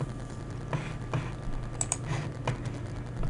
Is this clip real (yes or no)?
yes